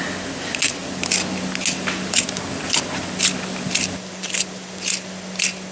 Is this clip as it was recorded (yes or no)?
yes